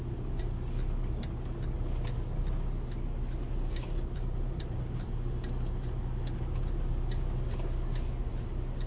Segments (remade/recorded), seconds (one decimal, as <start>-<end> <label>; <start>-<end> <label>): 0.0-3.4 recorded; 3.4-5.9 remade; 5.9-8.3 recorded; 8.3-8.9 remade